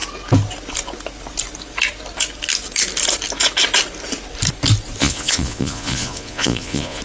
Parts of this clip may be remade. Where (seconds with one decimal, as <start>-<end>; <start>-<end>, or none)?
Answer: 5.0-7.0